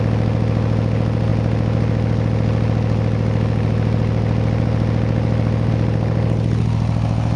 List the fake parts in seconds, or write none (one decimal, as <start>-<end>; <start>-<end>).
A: none